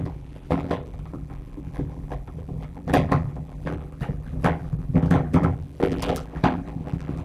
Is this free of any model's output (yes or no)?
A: no